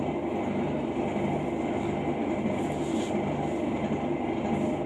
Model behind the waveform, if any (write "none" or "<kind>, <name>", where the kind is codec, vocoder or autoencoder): none